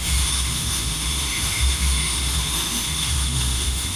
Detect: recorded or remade remade